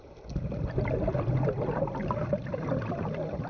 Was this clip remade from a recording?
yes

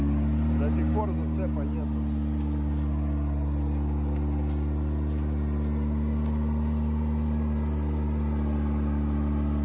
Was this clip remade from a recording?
no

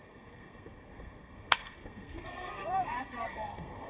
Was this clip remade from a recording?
yes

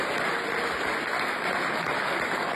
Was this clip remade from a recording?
no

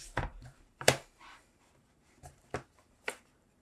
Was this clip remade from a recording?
yes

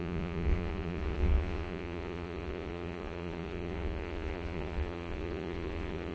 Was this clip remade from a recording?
yes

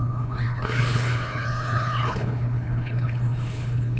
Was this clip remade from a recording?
yes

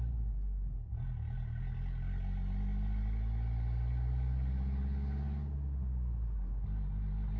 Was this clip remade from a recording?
no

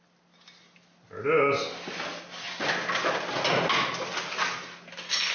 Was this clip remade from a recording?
no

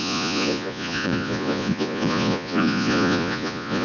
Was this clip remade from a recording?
yes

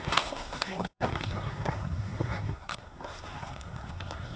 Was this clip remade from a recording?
yes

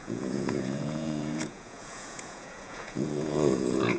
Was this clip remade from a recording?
yes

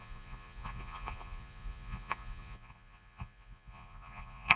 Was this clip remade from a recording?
yes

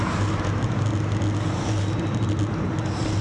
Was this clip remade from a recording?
no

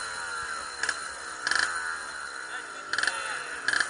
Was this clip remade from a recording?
no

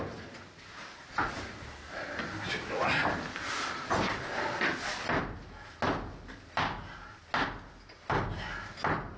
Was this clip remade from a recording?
no